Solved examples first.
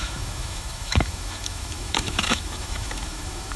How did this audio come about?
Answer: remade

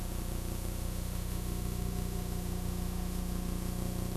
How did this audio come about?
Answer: remade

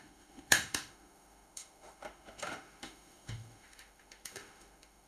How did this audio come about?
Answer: remade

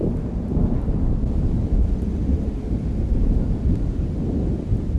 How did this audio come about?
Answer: recorded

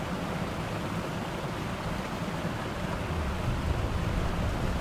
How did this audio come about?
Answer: recorded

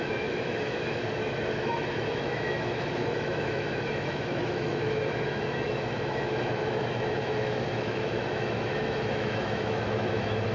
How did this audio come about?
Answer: remade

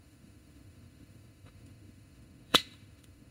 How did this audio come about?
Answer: remade